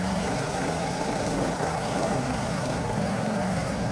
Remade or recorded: remade